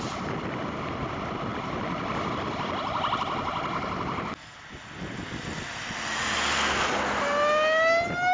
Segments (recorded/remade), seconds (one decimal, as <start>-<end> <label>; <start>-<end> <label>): 0.0-8.3 recorded